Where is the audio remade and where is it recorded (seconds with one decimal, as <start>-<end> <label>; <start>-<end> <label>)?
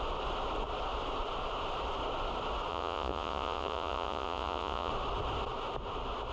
0.0-2.7 recorded; 2.7-4.9 remade; 4.9-6.3 recorded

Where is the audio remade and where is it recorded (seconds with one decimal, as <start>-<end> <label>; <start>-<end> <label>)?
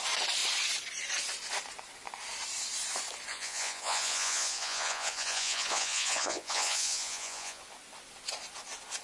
0.0-3.3 recorded; 3.3-7.6 remade; 7.6-9.0 recorded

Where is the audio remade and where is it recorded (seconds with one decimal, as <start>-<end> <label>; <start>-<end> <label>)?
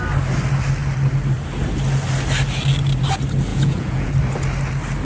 0.0-3.5 recorded; 3.5-4.1 remade; 4.1-5.0 recorded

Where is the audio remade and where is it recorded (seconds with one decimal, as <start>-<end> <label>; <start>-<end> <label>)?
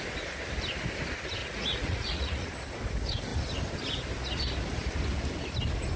0.0-1.4 recorded; 1.4-2.5 remade; 2.5-6.0 recorded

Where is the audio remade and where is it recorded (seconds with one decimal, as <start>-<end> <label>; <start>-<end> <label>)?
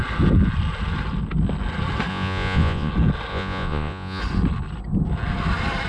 0.0-2.1 recorded; 2.1-2.9 remade; 2.9-3.3 recorded; 3.3-4.2 remade; 4.2-5.9 recorded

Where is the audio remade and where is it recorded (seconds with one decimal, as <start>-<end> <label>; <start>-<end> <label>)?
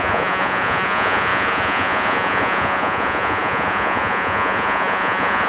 0.0-5.5 remade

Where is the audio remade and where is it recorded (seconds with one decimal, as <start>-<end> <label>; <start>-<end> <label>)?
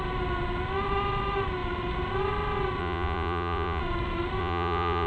0.0-2.8 recorded; 2.8-3.8 remade; 3.8-4.4 recorded; 4.4-5.1 remade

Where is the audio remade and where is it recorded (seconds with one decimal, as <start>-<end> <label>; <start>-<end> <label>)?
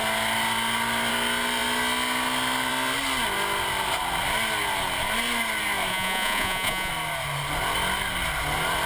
0.0-5.9 recorded; 5.9-6.9 remade; 6.9-8.9 recorded